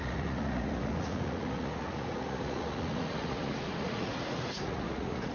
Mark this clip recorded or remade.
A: remade